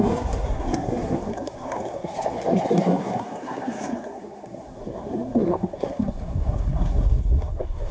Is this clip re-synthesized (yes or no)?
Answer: yes